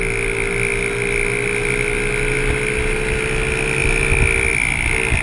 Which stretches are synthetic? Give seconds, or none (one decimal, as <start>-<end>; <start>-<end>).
none